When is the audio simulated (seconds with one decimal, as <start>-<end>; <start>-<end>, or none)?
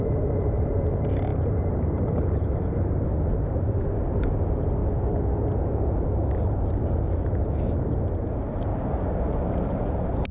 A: 0.0-4.8; 5.7-8.7; 9.4-10.3